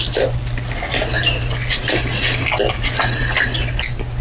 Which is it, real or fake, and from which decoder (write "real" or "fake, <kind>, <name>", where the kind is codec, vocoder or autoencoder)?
real